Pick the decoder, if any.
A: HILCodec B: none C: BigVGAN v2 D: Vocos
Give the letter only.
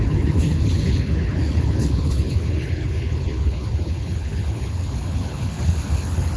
A